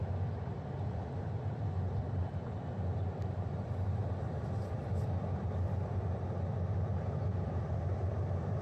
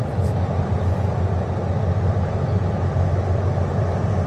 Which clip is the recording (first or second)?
second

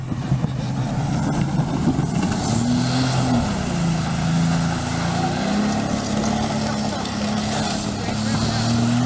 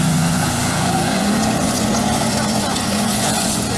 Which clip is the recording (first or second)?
first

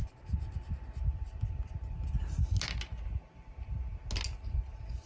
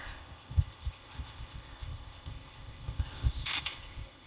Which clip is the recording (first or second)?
first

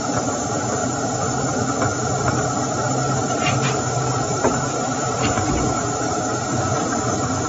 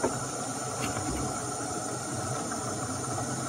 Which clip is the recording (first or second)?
second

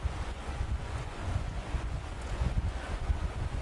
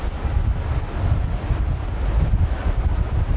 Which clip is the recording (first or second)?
second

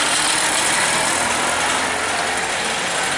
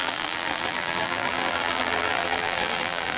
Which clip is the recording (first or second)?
first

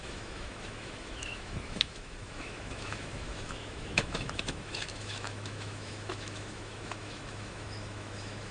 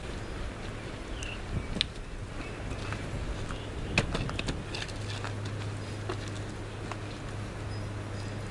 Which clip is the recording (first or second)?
second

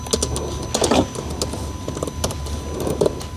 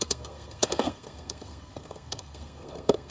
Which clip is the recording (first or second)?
first